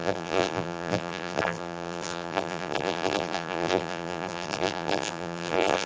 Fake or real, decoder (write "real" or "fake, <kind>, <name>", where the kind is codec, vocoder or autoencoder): fake, vocoder, BigVGAN v2